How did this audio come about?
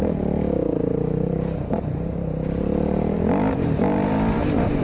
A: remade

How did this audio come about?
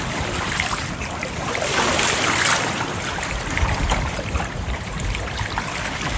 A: remade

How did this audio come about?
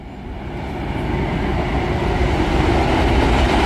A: recorded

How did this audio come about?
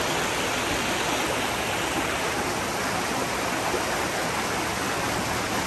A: recorded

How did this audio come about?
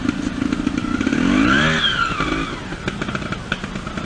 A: recorded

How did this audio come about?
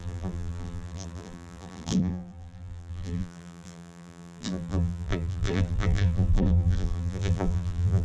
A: remade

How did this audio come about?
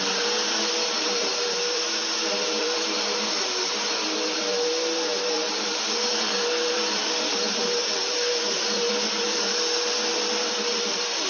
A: remade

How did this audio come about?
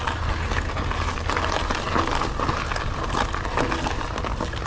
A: recorded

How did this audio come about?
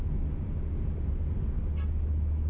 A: recorded